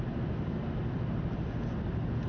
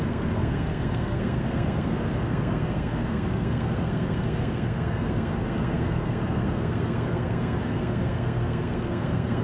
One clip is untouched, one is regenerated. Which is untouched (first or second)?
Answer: first